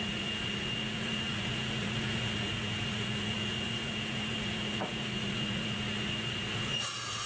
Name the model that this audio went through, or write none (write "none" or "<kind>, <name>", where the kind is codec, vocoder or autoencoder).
vocoder, Vocos